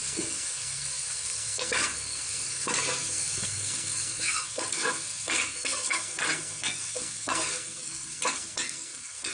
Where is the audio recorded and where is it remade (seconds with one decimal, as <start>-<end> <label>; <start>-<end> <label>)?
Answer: 0.0-9.3 remade